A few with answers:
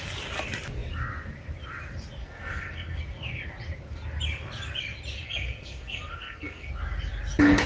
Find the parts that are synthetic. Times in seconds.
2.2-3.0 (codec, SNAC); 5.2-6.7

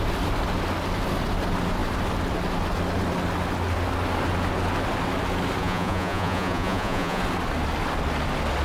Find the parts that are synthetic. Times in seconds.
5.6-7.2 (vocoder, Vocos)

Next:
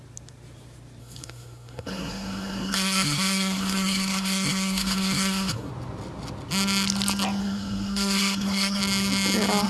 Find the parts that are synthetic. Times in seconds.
1.0-5.7 (codec, SNAC); 7.4-8.8

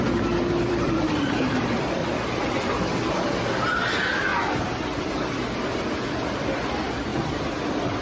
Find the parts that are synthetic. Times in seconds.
0.0-2.0 (vocoder, BigVGAN v2); 3.8-4.3; 5.2-8.0